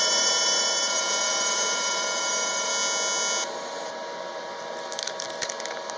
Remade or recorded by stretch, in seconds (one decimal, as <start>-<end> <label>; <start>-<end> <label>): 0.0-2.7 remade; 2.7-6.0 recorded